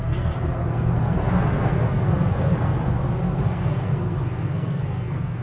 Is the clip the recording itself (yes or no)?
no